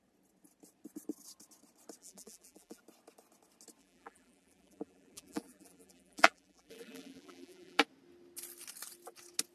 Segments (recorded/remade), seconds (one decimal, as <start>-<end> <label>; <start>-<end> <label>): 0.0-2.0 recorded; 2.0-2.8 remade; 2.8-3.8 recorded; 3.8-7.8 remade; 7.8-9.5 recorded